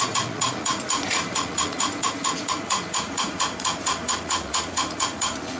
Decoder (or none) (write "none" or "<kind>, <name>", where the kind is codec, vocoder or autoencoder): vocoder, Vocos